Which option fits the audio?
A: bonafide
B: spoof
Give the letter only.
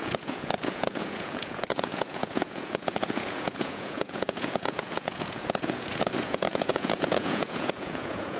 B